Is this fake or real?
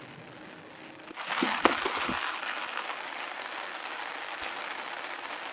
real